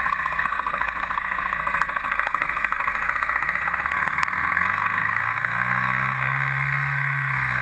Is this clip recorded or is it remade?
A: remade